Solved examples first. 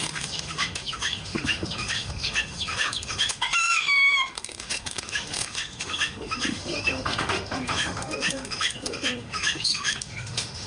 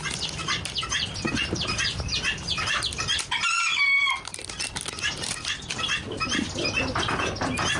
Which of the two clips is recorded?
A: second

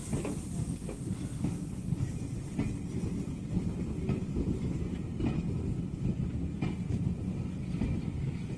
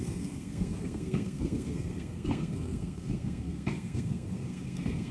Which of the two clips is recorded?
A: first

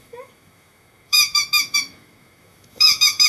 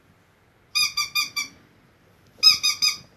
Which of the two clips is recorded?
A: second